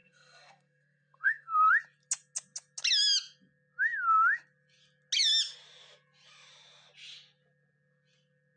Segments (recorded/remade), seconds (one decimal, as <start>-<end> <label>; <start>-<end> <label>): 0.0-1.7 remade; 1.7-8.6 recorded